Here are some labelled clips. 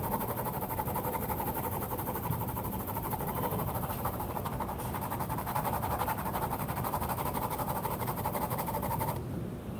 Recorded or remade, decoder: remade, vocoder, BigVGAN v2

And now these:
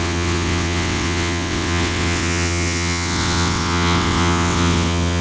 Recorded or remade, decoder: remade, vocoder, WaveNeXt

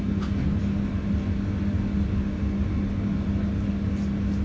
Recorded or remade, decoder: recorded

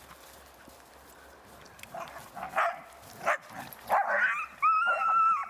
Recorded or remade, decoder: recorded